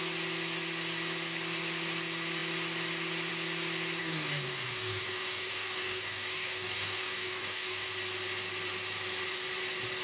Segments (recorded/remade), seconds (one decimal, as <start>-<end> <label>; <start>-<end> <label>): 0.0-4.0 recorded; 4.0-7.9 remade; 7.9-10.0 recorded